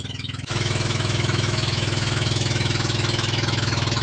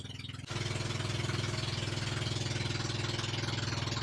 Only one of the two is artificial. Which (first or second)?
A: first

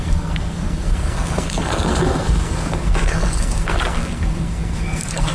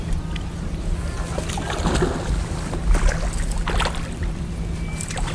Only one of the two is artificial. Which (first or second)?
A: first